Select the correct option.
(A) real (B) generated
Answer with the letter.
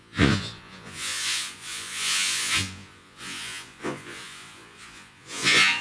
B